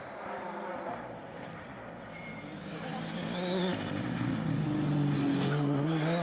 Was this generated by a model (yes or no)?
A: no